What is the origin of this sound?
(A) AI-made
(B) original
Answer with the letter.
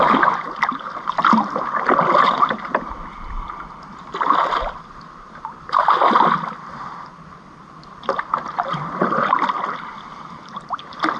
A